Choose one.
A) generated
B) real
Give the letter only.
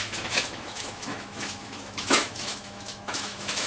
A